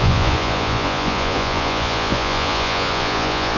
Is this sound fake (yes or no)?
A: yes